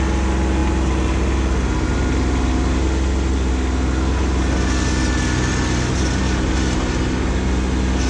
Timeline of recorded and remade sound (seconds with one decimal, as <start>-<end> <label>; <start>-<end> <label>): 0.0-8.1 recorded

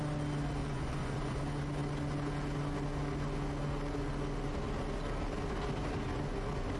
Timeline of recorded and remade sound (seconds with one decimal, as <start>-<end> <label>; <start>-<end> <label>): 0.0-0.6 recorded; 0.6-1.4 remade; 1.4-6.8 recorded

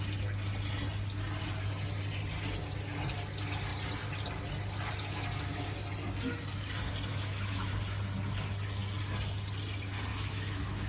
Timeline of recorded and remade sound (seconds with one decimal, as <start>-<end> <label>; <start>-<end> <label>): 0.0-7.1 recorded; 7.1-7.7 remade; 7.7-10.1 recorded; 10.1-10.9 remade

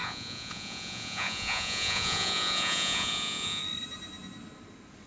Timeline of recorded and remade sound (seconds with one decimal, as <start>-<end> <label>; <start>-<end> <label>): 0.0-3.6 remade; 3.6-5.1 recorded

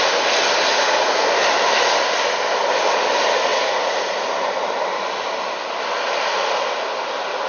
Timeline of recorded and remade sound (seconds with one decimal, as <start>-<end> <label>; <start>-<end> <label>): 0.0-0.7 recorded; 0.7-1.2 remade; 1.2-3.5 recorded; 3.5-4.2 remade; 4.2-7.5 recorded

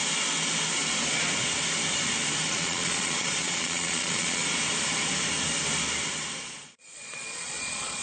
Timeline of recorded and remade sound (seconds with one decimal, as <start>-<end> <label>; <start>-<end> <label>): 0.0-2.5 recorded; 2.5-4.4 remade; 4.4-6.4 recorded; 6.4-8.0 remade